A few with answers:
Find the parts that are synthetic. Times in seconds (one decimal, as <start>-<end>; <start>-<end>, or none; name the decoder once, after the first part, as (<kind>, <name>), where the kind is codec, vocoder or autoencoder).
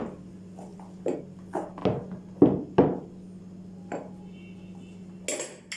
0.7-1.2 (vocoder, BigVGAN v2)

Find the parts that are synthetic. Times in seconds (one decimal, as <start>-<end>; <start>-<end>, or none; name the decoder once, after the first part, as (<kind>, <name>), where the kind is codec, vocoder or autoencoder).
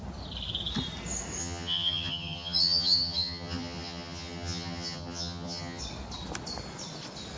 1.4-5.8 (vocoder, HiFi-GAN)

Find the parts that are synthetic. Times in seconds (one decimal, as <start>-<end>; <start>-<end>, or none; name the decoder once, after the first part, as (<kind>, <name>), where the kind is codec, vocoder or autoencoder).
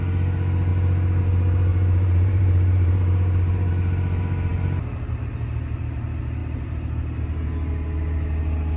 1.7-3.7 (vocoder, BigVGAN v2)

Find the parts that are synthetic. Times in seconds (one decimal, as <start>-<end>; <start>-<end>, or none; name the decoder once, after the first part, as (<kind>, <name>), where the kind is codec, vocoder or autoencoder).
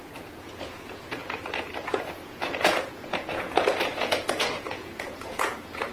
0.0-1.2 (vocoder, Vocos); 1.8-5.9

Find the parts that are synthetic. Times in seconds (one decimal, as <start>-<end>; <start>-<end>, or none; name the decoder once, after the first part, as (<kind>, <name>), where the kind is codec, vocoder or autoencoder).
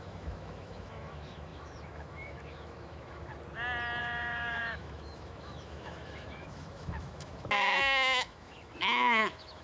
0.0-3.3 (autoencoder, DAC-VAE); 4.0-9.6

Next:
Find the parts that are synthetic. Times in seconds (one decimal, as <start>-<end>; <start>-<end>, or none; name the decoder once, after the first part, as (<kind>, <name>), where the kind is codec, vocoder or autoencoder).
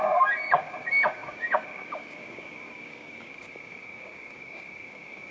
0.0-5.3 (codec, DAC)